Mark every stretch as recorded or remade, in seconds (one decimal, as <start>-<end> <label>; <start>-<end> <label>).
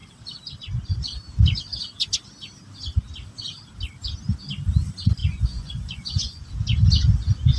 0.0-5.2 recorded; 5.2-6.5 remade; 6.5-7.6 recorded